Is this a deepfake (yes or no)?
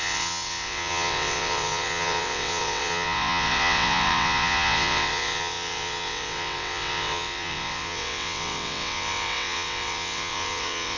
yes